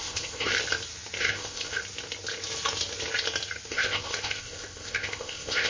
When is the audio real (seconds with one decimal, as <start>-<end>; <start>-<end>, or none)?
0.5-1.2; 1.8-3.7